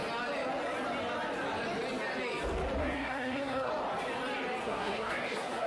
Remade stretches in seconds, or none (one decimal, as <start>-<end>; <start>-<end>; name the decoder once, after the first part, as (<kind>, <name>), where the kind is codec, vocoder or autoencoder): 2.8-3.7 (codec, SNAC); 4.6-5.7